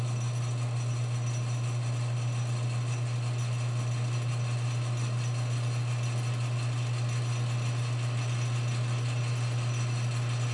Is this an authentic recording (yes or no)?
yes